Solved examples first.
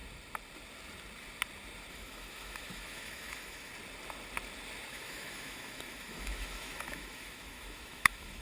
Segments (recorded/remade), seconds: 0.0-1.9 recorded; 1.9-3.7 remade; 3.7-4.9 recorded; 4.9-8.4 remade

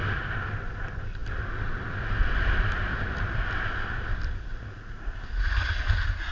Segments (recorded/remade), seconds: 0.0-6.3 recorded

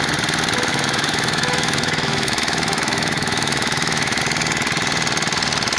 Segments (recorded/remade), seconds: 0.0-0.7 recorded; 0.7-4.2 remade; 4.2-5.8 recorded